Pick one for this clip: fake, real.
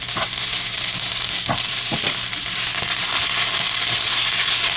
real